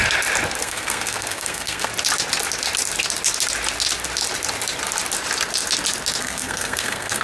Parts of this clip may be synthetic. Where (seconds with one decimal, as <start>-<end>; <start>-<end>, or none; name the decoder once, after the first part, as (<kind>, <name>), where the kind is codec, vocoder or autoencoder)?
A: 0.6-1.9 (codec, SNAC); 6.2-7.2